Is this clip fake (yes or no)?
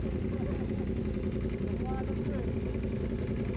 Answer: no